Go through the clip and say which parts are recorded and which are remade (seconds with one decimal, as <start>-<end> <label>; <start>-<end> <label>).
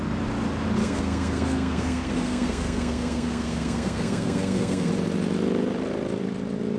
0.0-0.8 recorded; 0.8-4.9 remade; 4.9-6.8 recorded